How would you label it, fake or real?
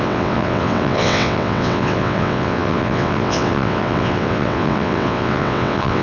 fake